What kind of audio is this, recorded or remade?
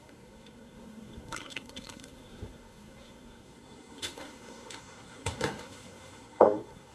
remade